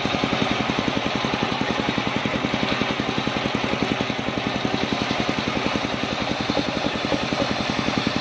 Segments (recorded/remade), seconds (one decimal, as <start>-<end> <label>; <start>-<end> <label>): 0.0-2.3 remade; 2.3-6.7 recorded; 6.7-8.2 remade